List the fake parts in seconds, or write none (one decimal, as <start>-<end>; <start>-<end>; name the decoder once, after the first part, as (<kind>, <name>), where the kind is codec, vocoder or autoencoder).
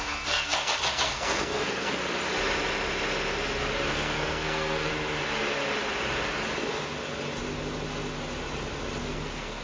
0.0-2.0 (codec, SNAC); 3.9-4.9; 9.0-9.6